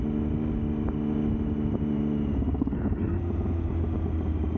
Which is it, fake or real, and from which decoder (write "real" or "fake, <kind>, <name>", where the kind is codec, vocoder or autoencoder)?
real